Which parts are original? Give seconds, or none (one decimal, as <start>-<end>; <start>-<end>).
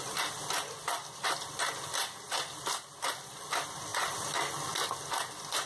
0.0-5.7